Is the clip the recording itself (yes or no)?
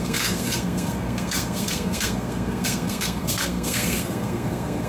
no